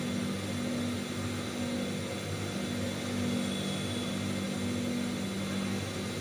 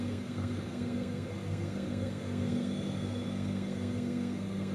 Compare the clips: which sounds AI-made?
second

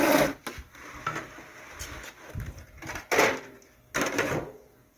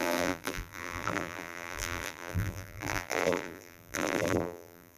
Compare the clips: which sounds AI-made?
second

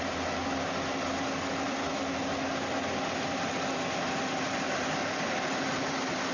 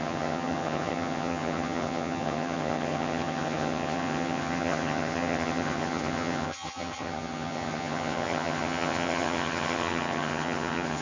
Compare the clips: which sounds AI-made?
second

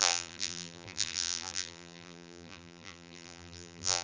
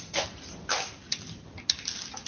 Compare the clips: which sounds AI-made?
first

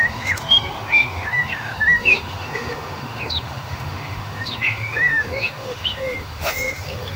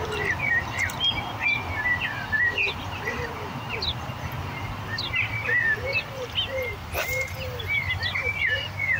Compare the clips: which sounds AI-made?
first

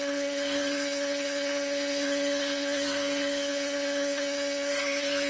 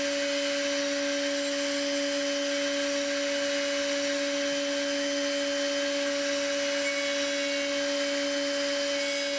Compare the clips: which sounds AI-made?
first